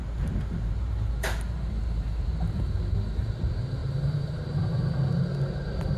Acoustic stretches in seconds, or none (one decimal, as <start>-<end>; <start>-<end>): 3.3-3.8; 4.6-6.0